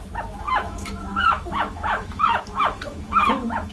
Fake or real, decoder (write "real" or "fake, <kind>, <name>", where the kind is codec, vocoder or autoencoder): fake, autoencoder, DAC-VAE